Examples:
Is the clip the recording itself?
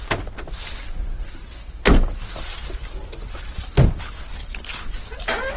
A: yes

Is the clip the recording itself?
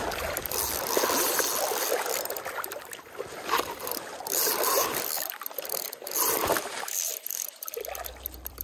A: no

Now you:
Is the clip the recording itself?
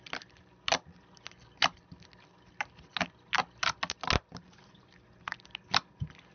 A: yes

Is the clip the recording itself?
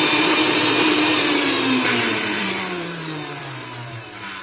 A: no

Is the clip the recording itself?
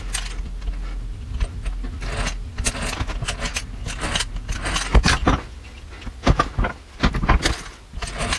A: yes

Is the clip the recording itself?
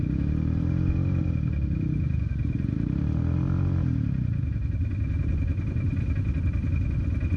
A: yes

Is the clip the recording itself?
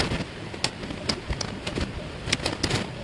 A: yes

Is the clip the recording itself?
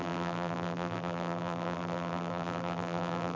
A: no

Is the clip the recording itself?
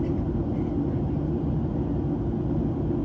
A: yes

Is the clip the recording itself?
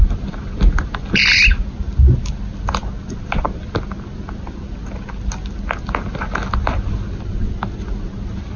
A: yes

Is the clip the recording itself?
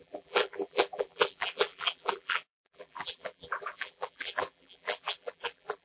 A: no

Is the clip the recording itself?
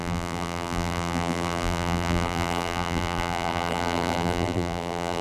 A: no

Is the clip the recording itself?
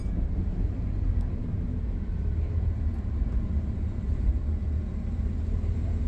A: no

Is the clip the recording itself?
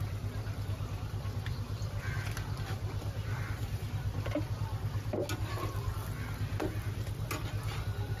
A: yes